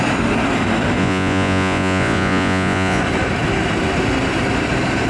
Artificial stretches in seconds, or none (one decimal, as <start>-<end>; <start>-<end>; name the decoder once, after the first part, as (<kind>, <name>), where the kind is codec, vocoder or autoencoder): 1.0-3.0 (vocoder, Vocos)